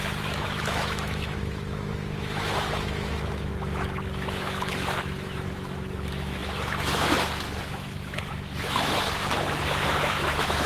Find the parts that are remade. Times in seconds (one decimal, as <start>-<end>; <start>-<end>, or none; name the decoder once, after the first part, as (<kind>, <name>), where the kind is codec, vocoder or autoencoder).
0.0-10.7 (autoencoder, DAC-VAE)

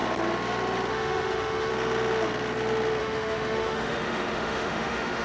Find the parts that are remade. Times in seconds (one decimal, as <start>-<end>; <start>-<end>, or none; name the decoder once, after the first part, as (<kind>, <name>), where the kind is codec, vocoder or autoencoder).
0.9-1.7 (autoencoder, DAC-VAE); 3.0-5.2

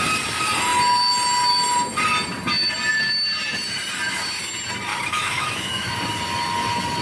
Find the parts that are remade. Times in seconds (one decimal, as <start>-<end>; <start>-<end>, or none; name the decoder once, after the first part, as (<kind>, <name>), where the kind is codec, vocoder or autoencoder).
4.9-5.9 (autoencoder, DAC-VAE)

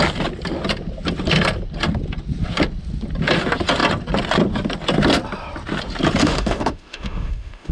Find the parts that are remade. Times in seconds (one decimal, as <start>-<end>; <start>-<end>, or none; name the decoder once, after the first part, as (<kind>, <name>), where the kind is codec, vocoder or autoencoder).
6.2-7.7 (autoencoder, DAC-VAE)

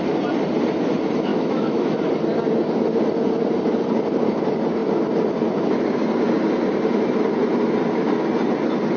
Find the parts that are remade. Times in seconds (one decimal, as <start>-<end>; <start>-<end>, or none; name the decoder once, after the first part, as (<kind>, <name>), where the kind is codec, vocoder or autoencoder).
1.3-2.0 (autoencoder, DAC-VAE)

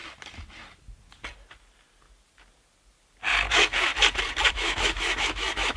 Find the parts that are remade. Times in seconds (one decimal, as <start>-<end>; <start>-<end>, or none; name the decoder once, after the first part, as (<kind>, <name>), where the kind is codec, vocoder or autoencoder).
3.5-3.9 (autoencoder, DAC-VAE); 4.5-5.8

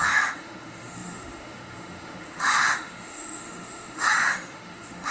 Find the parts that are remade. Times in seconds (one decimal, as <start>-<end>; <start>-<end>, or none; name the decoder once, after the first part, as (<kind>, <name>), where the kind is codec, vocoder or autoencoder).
0.0-5.1 (autoencoder, DAC-VAE)

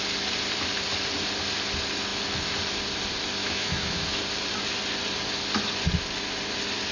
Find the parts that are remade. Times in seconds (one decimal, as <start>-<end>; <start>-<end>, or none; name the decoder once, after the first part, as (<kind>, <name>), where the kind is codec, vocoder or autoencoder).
3.4-4.2 (autoencoder, DAC-VAE)